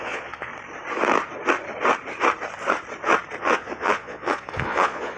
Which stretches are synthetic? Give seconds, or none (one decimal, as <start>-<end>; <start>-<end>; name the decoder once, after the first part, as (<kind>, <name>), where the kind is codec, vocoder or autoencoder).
0.0-0.5 (vocoder, Vocos); 3.4-5.2

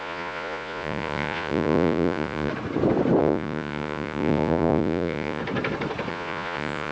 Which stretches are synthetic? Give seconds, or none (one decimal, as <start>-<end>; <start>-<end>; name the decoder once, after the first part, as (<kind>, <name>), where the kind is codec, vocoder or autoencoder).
0.0-2.5 (vocoder, Vocos); 3.2-5.4; 6.1-6.9

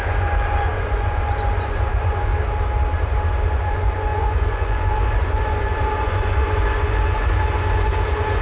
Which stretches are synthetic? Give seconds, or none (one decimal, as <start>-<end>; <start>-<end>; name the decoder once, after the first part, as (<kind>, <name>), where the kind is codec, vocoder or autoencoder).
0.0-2.3 (vocoder, Vocos); 3.5-8.4

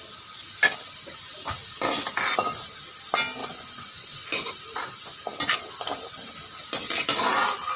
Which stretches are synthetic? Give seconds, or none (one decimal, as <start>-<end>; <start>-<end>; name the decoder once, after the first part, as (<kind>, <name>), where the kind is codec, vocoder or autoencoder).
3.4-4.5 (vocoder, Vocos)

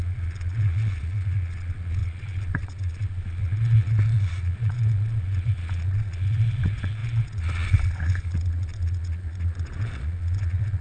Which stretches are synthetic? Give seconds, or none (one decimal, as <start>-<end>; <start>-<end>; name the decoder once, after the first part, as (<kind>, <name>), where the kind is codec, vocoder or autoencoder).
0.0-10.8 (vocoder, Vocos)